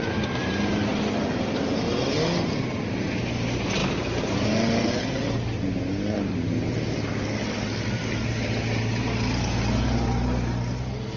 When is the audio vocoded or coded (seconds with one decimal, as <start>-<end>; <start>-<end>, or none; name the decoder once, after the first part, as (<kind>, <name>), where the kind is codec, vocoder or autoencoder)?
none